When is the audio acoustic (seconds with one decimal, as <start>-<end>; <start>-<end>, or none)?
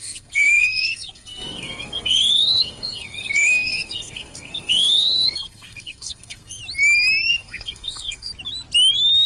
6.6-7.3; 8.3-9.3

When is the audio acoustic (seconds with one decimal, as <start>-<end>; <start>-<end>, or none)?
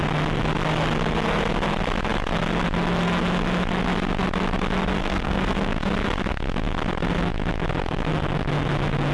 0.0-5.0; 5.7-9.1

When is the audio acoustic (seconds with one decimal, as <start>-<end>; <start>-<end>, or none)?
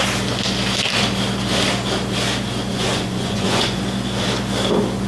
0.0-2.7; 3.8-5.1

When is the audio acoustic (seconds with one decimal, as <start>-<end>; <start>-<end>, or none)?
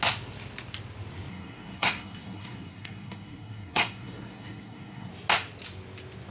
0.0-1.3; 5.1-6.3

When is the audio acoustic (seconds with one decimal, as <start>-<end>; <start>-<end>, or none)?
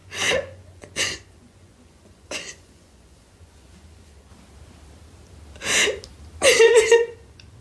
4.3-6.6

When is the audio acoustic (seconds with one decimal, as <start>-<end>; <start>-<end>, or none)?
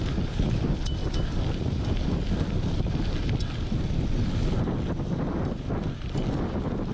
0.0-6.9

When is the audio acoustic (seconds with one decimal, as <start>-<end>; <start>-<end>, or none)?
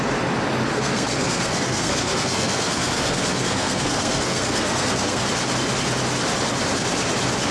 0.0-0.7; 5.2-7.5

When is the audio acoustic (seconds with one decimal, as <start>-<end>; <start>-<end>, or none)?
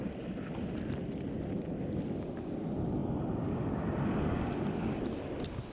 0.0-5.7